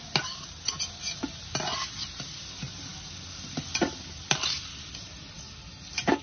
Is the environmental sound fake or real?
real